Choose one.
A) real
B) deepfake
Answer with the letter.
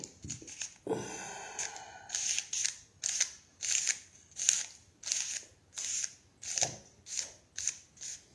A